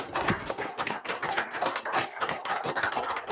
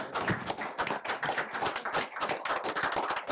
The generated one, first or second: first